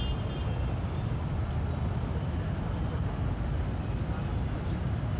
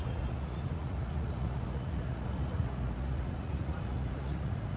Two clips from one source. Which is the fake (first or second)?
second